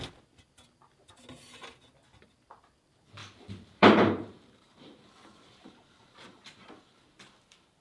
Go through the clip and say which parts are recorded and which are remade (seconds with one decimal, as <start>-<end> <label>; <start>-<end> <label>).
0.0-3.2 recorded; 3.2-6.8 remade; 6.8-7.8 recorded